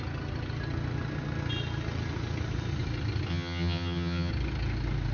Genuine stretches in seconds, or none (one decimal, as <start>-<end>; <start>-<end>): 0.0-3.3; 4.3-5.1